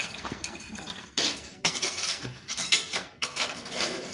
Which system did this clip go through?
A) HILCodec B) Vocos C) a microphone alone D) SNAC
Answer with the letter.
D